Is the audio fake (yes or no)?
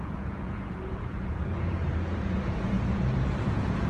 yes